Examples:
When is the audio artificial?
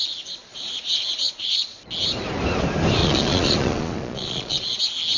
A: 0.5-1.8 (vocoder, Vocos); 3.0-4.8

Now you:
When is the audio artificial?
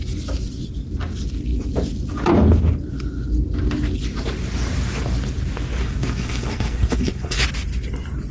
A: 5.8-7.4 (codec, SNAC)